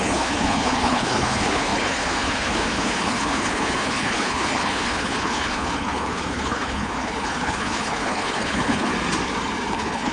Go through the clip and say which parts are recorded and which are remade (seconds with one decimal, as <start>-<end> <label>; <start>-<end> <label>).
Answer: 0.0-8.9 remade; 8.9-9.7 recorded; 9.7-10.1 remade